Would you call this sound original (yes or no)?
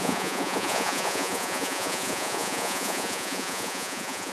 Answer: no